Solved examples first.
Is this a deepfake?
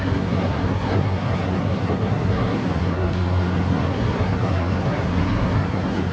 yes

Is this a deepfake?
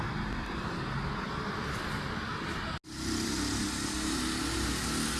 no